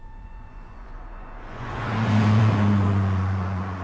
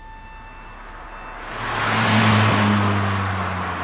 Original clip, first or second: second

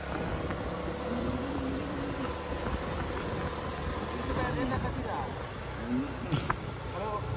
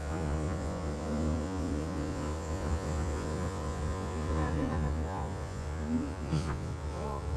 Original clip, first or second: first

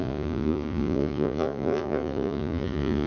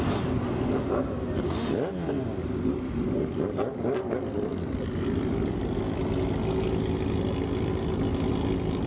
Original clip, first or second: second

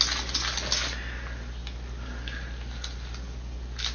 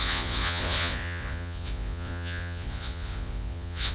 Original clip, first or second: first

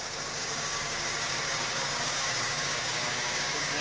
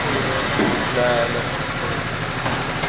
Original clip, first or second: second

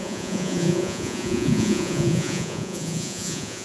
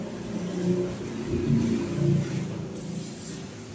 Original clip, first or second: second